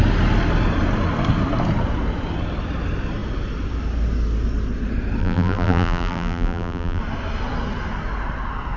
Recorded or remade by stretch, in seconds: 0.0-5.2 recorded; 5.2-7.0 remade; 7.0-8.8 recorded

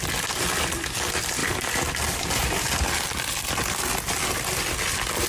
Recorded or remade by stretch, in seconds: 0.0-5.3 recorded

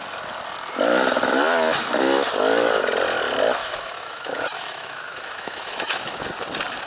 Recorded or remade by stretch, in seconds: 0.0-3.6 recorded; 3.6-6.2 remade; 6.2-6.9 recorded

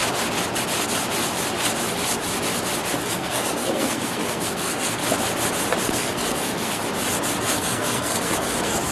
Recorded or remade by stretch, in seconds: 0.0-3.0 recorded; 3.0-5.0 remade; 5.0-5.8 recorded; 5.8-6.8 remade; 6.8-7.4 recorded; 7.4-8.9 remade

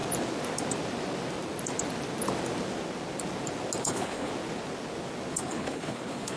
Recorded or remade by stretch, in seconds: 0.0-3.8 recorded; 3.8-4.3 remade; 4.3-5.3 recorded; 5.3-6.4 remade

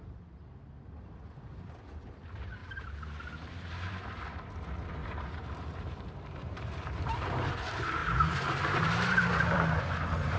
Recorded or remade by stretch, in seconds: 0.0-2.6 recorded; 2.6-4.2 remade; 4.2-5.0 recorded; 5.0-7.5 remade; 7.5-8.0 recorded; 8.0-10.4 remade

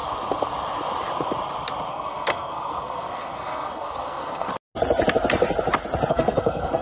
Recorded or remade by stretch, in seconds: 0.0-1.9 recorded; 1.9-4.5 remade; 4.5-6.1 recorded; 6.1-6.8 remade

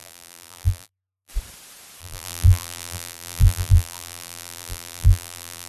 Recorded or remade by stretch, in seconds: 0.0-1.3 remade; 1.3-2.0 recorded; 2.0-5.7 remade